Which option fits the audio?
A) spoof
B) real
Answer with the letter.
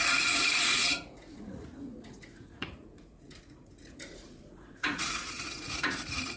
A